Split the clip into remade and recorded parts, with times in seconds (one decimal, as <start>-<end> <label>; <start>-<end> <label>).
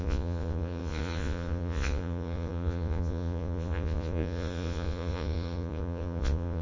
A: 0.0-6.6 remade